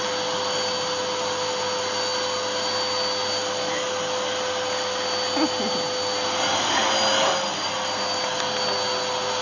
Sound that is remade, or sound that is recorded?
recorded